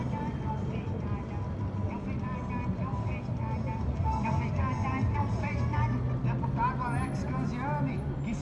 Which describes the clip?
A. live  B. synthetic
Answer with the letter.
A